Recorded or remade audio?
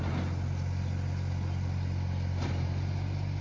recorded